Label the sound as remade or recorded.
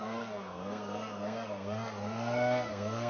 remade